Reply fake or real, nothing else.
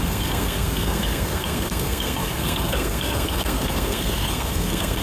fake